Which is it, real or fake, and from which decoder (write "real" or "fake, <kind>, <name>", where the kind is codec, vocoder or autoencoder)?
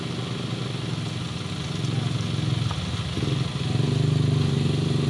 real